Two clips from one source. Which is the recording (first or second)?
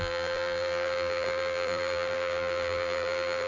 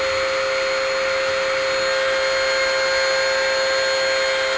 second